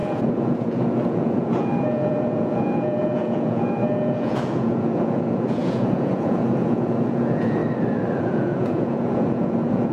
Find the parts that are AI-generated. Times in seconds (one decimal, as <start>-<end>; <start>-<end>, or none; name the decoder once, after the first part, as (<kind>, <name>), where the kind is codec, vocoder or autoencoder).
0.0-7.6 (vocoder, Vocos); 8.2-9.9